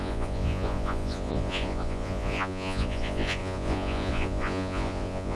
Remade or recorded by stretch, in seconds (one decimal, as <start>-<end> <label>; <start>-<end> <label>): 0.0-5.4 remade